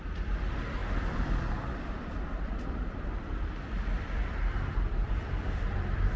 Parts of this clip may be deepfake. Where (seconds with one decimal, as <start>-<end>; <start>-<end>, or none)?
0.0-6.2